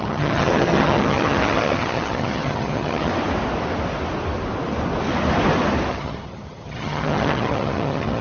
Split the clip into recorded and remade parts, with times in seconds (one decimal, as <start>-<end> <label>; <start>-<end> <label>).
0.0-3.1 remade; 3.1-5.9 recorded; 5.9-8.2 remade